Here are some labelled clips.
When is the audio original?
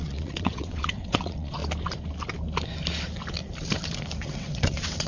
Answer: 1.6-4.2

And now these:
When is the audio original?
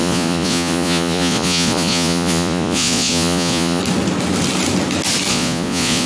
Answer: 3.8-5.3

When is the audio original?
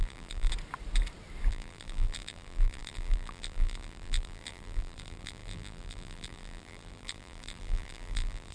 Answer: 0.5-1.5